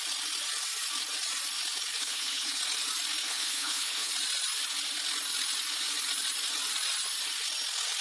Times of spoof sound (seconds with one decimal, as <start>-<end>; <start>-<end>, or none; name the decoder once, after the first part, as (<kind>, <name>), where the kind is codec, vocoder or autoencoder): 2.0-2.6 (codec, HILCodec); 3.2-4.1